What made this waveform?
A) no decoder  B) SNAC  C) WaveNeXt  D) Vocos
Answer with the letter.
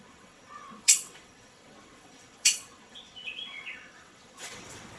C